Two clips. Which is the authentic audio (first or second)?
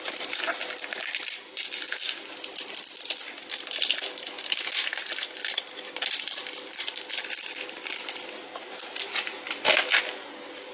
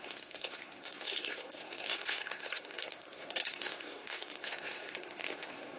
first